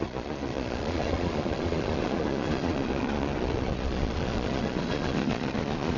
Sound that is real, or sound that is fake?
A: fake